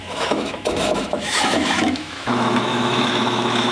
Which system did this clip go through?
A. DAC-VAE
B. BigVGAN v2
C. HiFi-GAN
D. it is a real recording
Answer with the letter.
A